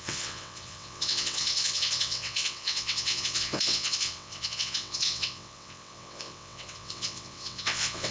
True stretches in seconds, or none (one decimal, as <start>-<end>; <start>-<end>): none